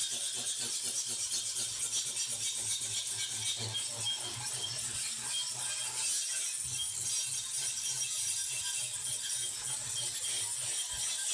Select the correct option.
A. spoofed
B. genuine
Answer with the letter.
B